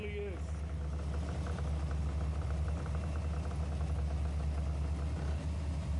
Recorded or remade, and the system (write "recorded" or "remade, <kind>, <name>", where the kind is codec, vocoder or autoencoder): recorded